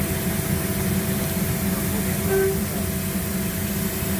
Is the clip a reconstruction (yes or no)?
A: no